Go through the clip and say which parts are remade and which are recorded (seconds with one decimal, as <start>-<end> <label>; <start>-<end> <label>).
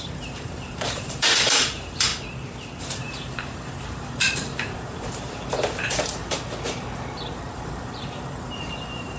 0.0-2.1 remade; 2.1-2.8 recorded; 2.8-6.2 remade; 6.2-7.3 recorded; 7.3-9.2 remade